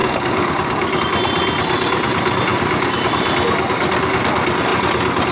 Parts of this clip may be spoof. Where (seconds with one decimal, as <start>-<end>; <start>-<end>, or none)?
0.0-1.0